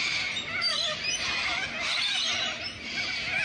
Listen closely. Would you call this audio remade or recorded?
recorded